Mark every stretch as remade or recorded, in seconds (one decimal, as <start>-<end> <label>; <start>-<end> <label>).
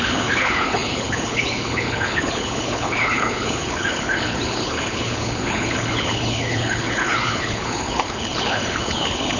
0.0-9.4 remade